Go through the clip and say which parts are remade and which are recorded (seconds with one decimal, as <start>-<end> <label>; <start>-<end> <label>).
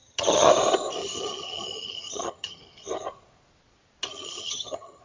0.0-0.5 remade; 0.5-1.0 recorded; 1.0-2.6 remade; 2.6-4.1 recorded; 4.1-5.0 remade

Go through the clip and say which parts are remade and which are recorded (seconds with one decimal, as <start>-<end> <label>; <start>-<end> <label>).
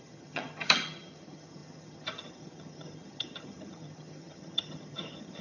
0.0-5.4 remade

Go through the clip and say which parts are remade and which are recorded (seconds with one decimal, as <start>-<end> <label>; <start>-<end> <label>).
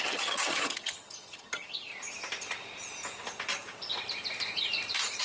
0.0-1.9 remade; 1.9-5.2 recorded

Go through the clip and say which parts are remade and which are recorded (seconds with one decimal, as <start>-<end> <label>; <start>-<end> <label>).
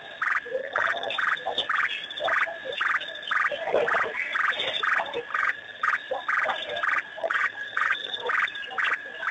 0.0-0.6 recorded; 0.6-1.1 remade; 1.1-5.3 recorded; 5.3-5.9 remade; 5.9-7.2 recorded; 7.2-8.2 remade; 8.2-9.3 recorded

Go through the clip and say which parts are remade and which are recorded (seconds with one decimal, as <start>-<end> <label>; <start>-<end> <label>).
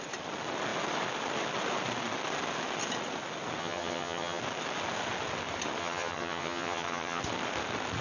0.0-3.6 recorded; 3.6-4.4 remade; 4.4-5.8 recorded; 5.8-7.2 remade; 7.2-8.0 recorded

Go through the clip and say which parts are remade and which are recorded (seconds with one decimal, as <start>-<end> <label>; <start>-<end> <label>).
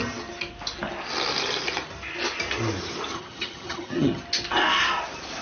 0.0-3.1 recorded; 3.1-4.2 remade; 4.2-5.4 recorded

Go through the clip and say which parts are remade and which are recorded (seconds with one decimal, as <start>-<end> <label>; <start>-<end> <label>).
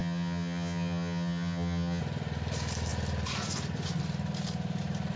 0.0-2.0 remade; 2.0-5.2 recorded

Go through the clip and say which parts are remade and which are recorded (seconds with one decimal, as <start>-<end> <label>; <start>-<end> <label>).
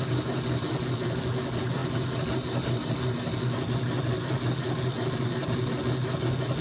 0.0-6.6 recorded